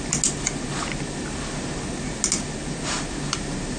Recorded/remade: recorded